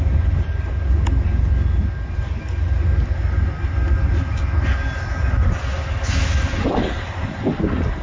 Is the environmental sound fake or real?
real